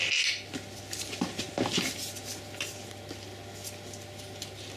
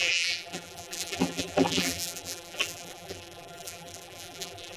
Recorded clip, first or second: first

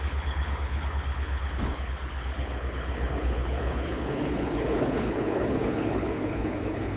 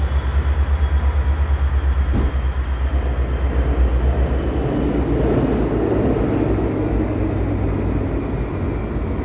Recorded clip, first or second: second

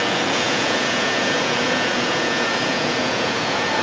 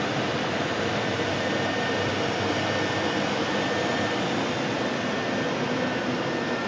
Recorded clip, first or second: second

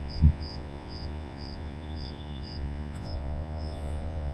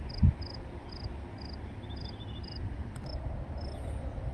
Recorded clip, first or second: second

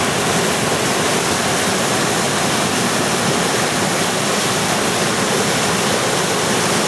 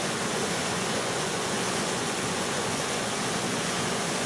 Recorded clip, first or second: first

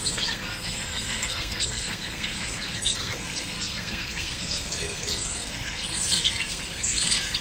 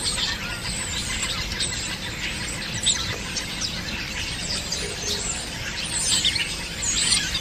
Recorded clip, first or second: second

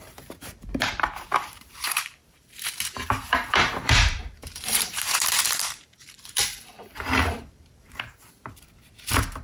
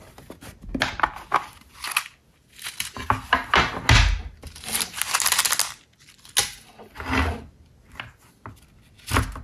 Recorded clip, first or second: second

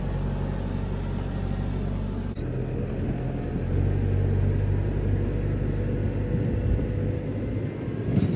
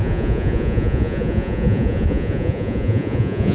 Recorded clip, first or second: first